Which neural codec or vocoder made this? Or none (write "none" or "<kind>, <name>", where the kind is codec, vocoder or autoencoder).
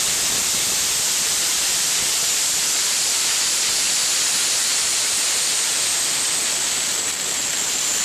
vocoder, BigVGAN v2